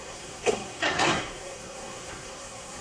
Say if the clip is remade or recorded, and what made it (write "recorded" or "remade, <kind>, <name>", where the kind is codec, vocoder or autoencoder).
remade, codec, SNAC